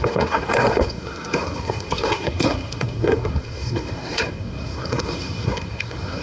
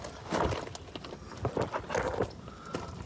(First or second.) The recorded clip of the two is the second